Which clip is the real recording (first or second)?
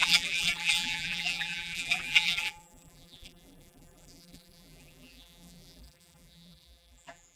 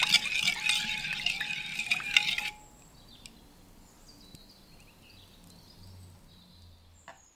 second